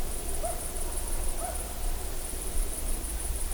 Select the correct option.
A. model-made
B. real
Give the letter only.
A